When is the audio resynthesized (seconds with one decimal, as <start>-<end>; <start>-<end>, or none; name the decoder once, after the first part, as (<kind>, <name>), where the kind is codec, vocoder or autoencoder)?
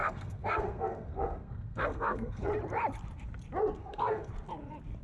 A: 0.0-2.5 (codec, SNAC); 3.8-4.3